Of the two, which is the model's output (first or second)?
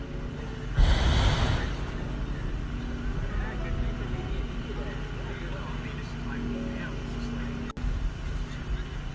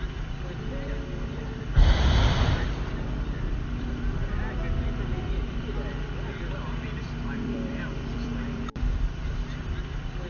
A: second